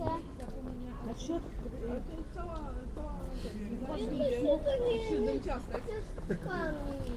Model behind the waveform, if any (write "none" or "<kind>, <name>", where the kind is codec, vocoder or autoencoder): none